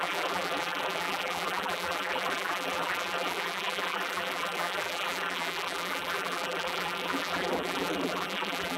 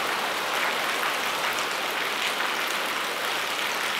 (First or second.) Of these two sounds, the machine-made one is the first